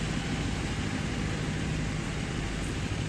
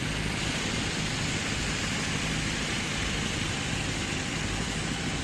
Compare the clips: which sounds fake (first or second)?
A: second